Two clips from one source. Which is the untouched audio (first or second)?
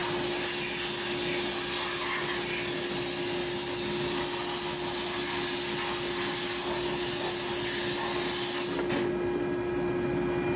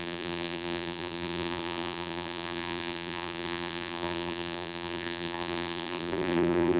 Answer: first